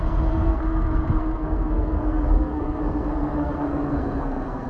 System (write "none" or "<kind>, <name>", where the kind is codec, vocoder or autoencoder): codec, SNAC